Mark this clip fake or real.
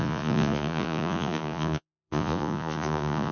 fake